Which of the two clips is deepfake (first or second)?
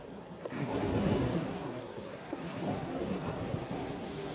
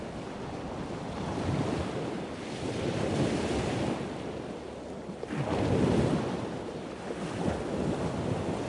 first